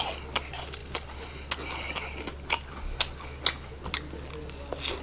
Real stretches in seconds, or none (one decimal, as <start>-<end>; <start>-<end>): 0.0-5.0